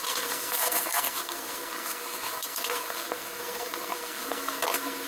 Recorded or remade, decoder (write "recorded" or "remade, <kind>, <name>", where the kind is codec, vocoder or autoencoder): remade, codec, SNAC